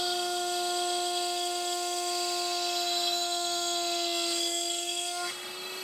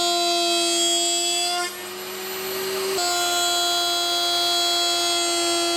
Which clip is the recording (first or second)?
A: second